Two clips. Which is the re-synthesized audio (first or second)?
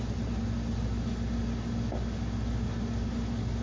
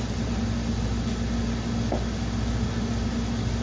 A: second